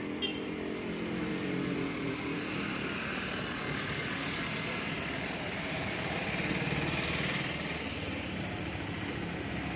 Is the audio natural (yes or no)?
yes